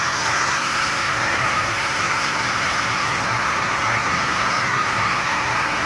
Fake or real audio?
fake